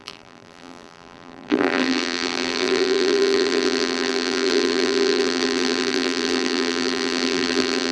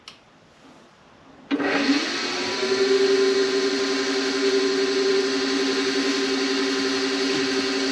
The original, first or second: second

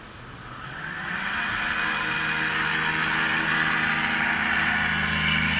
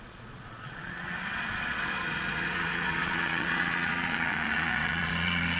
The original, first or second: first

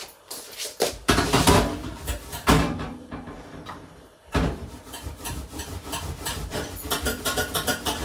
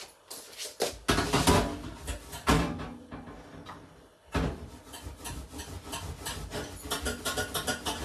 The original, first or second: second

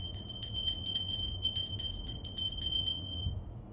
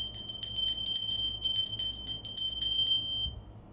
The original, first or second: second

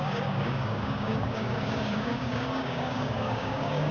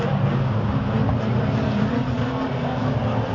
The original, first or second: second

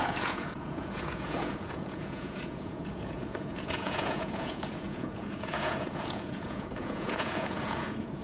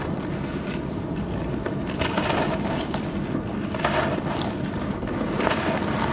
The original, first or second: second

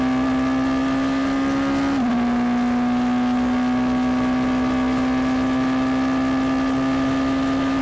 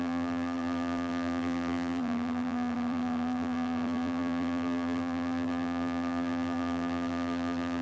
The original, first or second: first